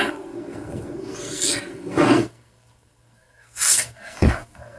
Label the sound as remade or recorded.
remade